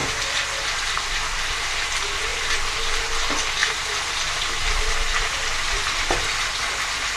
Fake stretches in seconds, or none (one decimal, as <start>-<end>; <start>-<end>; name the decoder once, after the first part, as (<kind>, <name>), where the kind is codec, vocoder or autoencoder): 0.0-1.6 (vocoder, BigVGAN v2); 3.6-6.5